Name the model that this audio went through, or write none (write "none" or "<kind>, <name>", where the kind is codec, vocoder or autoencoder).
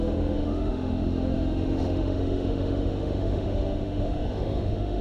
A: autoencoder, DAC-VAE